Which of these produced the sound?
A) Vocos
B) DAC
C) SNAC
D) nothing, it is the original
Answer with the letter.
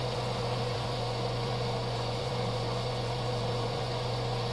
A